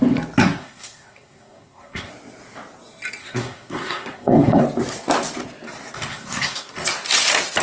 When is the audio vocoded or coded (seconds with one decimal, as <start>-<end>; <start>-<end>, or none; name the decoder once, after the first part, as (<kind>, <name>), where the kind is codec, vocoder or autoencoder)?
0.4-2.1 (codec, SNAC); 3.2-4.6; 6.1-6.7